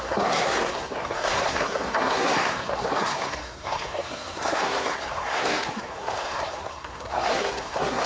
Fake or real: fake